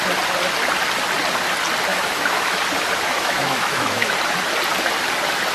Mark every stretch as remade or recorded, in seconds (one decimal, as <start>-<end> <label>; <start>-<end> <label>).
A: 0.0-1.9 recorded; 1.9-2.6 remade; 2.6-3.1 recorded; 3.1-4.1 remade; 4.1-5.5 recorded